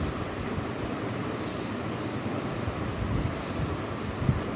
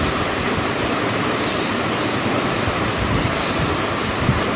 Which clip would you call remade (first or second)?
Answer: second